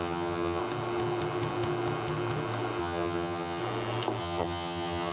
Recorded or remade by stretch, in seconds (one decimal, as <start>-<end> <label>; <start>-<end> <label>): 0.0-0.6 remade; 0.6-2.8 recorded; 2.8-3.6 remade; 3.6-4.2 recorded; 4.2-5.1 remade